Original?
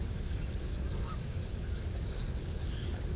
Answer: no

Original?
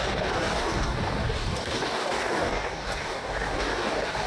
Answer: no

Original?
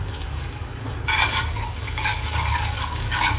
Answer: no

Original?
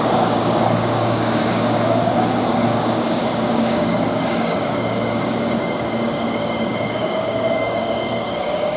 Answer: no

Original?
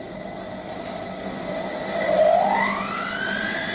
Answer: yes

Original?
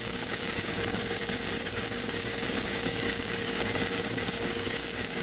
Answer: no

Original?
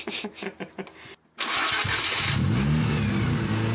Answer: yes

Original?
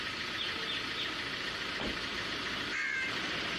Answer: yes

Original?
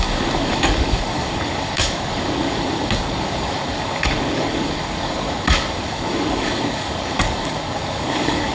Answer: no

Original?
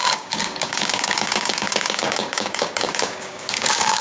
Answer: no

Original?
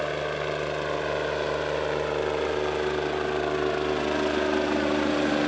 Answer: yes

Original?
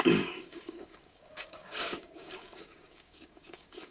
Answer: no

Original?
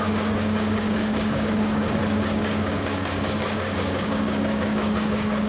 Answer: no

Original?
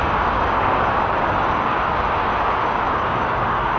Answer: no